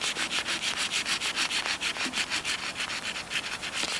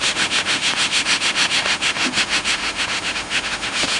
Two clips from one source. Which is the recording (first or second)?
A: first